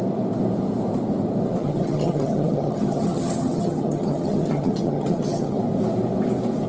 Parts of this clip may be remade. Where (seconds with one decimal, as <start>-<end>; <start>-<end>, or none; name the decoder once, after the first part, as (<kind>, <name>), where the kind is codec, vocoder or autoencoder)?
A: 1.6-5.6 (vocoder, HiFi-GAN)

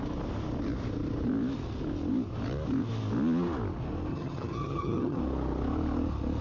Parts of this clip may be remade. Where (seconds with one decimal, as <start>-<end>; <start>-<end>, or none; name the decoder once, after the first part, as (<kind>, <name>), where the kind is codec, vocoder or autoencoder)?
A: 4.1-5.2 (vocoder, HiFi-GAN)

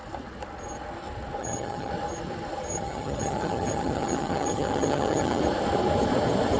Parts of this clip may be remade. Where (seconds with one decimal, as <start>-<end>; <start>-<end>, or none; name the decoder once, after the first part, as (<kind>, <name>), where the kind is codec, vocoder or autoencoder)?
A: 1.4-1.9 (vocoder, HiFi-GAN); 2.7-5.4

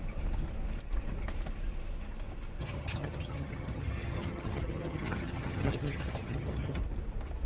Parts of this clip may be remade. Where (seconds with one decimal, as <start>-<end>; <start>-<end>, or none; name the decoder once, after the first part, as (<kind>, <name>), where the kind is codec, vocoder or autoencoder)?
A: 2.6-6.8 (vocoder, HiFi-GAN)

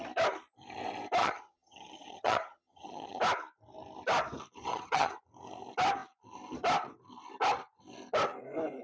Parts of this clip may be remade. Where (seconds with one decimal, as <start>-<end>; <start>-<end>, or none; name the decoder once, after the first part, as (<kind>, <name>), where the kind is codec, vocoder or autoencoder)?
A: 1.2-3.2 (vocoder, HiFi-GAN); 4.7-5.2

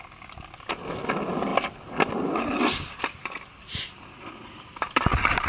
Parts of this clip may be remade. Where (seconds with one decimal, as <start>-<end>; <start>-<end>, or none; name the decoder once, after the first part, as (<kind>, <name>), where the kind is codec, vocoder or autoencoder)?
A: none

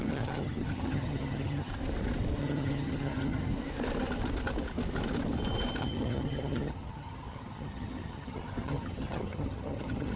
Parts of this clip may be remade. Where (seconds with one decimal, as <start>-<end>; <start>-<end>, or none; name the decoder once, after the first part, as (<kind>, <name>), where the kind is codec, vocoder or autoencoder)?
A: 0.0-1.7 (vocoder, HiFi-GAN); 2.4-3.5; 5.8-10.2

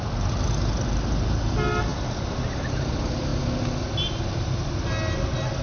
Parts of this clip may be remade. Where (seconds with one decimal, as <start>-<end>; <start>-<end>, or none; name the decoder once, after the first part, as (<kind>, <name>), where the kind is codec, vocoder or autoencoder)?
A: none